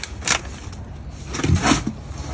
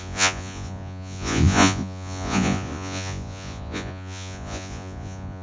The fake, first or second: second